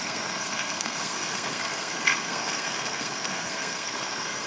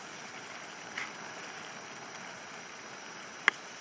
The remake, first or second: first